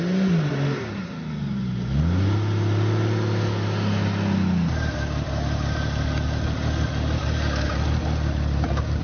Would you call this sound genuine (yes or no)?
yes